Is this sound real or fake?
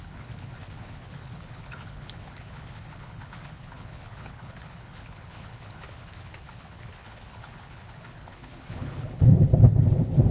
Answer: fake